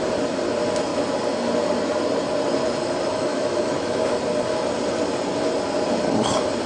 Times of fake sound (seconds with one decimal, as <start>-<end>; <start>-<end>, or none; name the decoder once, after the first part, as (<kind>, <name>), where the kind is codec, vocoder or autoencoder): 3.1-4.1 (autoencoder, DAC-VAE)